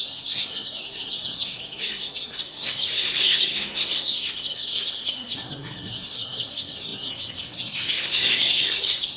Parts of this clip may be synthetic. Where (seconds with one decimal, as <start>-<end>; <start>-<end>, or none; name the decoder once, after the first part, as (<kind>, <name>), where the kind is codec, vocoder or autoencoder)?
0.0-9.2 (codec, SNAC)